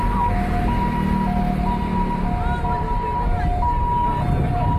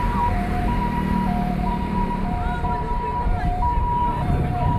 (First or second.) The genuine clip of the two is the first